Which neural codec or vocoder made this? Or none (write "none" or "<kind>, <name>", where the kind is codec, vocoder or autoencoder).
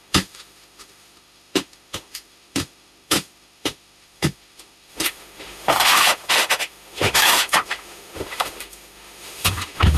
autoencoder, DAC-VAE